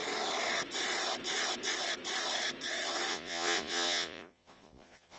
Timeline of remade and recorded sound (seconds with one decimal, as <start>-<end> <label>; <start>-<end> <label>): 0.0-3.1 recorded; 3.1-5.2 remade